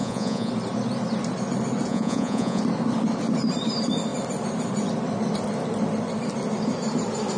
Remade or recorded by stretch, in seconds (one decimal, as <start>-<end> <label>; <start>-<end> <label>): 0.0-0.5 remade; 0.5-1.9 recorded; 1.9-2.6 remade; 2.6-7.4 recorded